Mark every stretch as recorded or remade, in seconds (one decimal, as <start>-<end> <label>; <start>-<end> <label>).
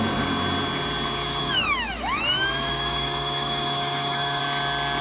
0.0-1.4 recorded; 1.4-4.4 remade; 4.4-5.0 recorded